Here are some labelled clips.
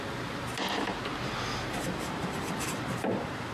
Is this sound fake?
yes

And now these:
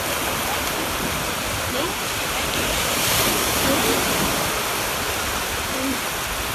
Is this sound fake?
no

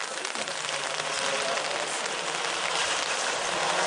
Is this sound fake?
yes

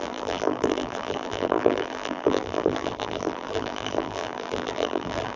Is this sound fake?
yes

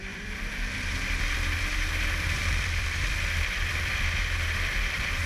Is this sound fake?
yes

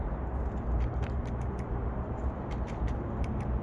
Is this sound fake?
yes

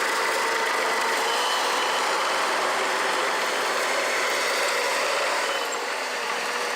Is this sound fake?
no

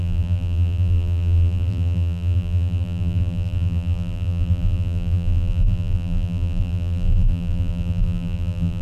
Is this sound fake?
yes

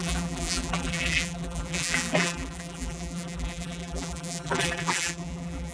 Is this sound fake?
yes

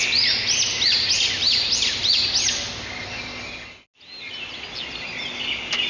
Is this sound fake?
no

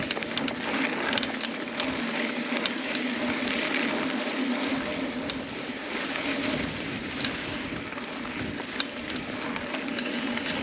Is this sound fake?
no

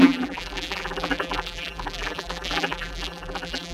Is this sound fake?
yes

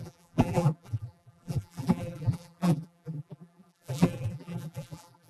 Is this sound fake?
yes